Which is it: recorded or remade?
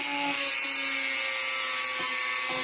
recorded